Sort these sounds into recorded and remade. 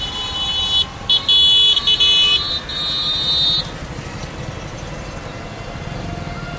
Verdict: recorded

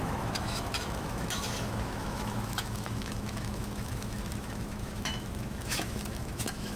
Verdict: remade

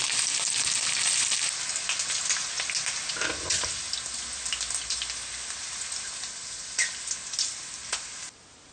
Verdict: recorded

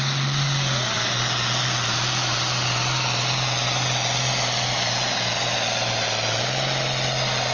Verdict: recorded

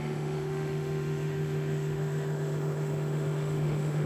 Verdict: remade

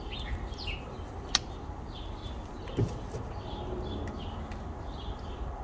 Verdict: recorded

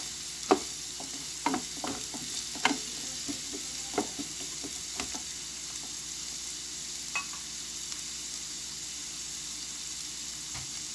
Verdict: recorded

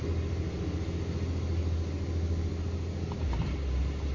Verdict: recorded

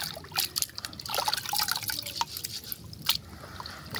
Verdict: recorded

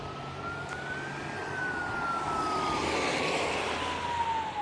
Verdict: recorded